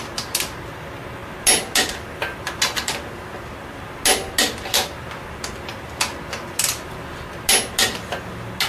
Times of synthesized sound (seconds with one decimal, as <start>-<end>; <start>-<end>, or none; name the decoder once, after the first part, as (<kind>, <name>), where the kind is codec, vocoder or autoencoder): none